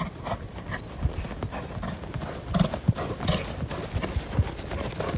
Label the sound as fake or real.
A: real